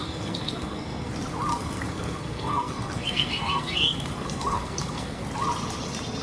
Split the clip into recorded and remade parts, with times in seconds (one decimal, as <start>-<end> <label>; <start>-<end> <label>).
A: 0.0-1.1 remade; 1.1-1.5 recorded; 1.5-5.2 remade; 5.2-6.2 recorded